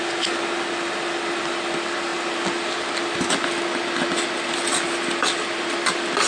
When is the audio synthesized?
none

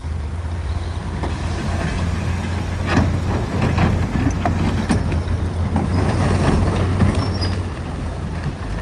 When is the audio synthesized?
0.0-1.0 (vocoder, BigVGAN v2); 5.9-6.5